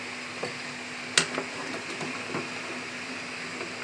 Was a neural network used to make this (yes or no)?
no